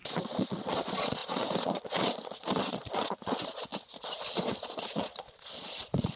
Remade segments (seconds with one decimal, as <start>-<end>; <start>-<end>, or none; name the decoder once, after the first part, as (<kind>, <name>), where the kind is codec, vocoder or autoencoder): 0.0-6.2 (vocoder, Vocos)